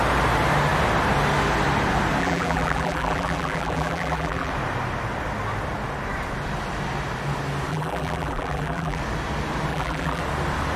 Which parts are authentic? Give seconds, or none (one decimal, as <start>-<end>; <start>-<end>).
0.0-2.2; 4.5-7.7; 9.0-9.7; 10.2-10.8